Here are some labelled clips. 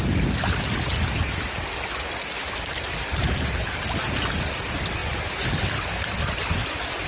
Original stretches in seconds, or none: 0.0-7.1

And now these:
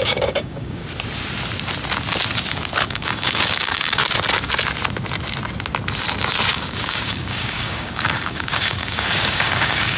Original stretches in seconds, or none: 0.8-2.9; 4.0-6.5

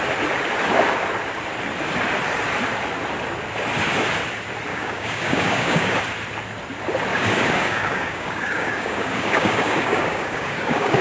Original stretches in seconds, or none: 0.0-4.7; 6.0-7.1

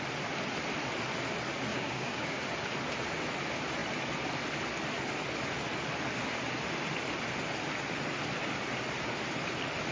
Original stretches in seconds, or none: 0.0-1.7; 2.4-9.9

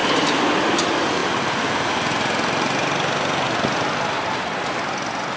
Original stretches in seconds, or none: 0.0-5.4